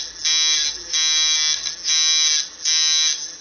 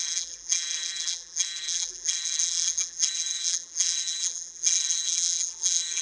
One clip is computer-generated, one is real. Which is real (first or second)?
first